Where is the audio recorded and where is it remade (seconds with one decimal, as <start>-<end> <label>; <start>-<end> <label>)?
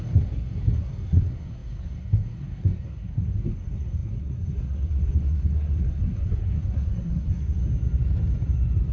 0.0-7.6 remade; 7.6-8.9 recorded